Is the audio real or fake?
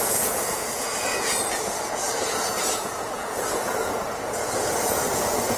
fake